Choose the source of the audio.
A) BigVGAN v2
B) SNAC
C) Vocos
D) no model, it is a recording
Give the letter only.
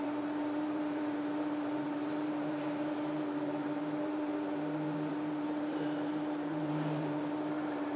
A